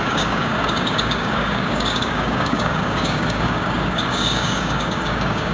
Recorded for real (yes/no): no